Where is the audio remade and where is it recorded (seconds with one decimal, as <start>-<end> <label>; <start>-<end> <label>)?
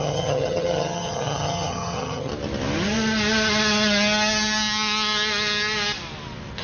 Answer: 0.0-2.3 remade; 2.3-6.6 recorded